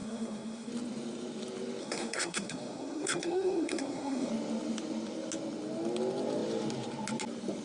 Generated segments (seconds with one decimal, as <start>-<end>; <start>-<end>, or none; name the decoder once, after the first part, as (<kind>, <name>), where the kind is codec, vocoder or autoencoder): 0.0-0.7 (codec, SNAC); 1.8-4.3